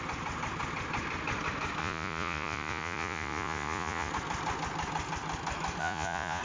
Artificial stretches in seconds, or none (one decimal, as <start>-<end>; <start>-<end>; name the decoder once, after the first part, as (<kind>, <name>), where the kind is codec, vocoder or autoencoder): 1.8-4.1 (vocoder, Vocos); 5.8-6.4